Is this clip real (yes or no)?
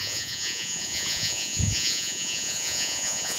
no